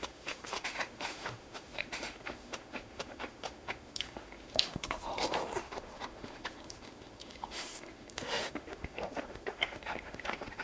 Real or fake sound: fake